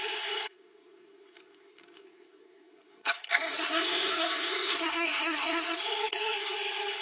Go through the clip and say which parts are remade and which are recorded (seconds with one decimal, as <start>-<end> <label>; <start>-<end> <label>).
0.0-7.0 remade